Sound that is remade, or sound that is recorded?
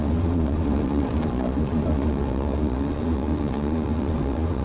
remade